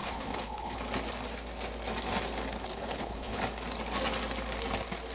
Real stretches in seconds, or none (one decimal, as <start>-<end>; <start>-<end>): 0.8-2.7; 3.4-5.1